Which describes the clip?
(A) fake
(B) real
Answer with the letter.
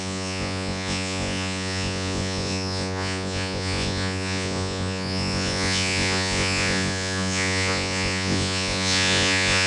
A